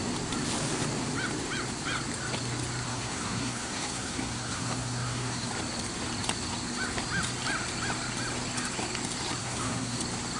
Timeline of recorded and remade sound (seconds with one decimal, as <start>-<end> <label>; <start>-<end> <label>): 0.0-2.9 recorded; 2.9-5.5 remade; 5.5-9.4 recorded; 9.4-10.0 remade; 10.0-10.4 recorded